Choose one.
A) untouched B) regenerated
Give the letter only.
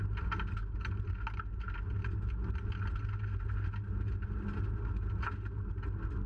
A